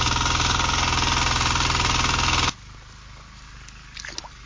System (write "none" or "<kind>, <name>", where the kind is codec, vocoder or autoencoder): none